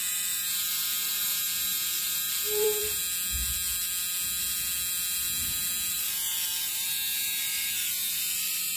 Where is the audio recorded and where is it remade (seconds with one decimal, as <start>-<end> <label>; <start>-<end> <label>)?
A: 0.0-3.0 remade; 3.0-5.9 recorded; 5.9-8.8 remade